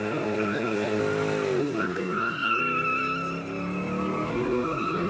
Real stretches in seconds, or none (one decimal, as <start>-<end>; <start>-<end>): 1.0-1.6; 2.6-4.3